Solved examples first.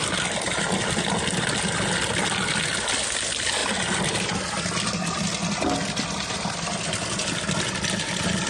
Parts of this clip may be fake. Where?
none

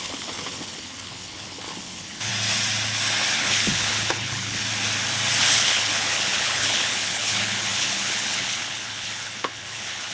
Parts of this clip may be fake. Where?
0.0-2.3 (codec, HILCodec); 3.4-4.6; 5.4-10.1

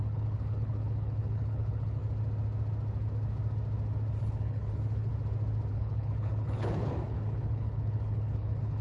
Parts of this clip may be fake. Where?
0.0-2.0 (codec, HILCodec); 4.2-5.1; 5.7-8.8

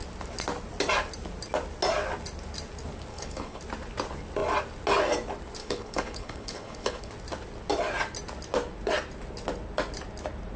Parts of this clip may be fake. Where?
3.1-3.6 (codec, HILCodec); 5.6-7.1

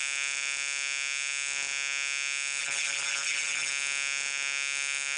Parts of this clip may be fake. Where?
2.6-3.7 (codec, HILCodec)